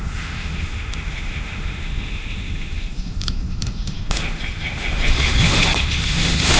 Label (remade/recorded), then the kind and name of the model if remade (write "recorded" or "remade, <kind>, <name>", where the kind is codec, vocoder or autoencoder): remade, autoencoder, DAC-VAE